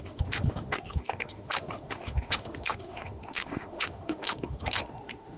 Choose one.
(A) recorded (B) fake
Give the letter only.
B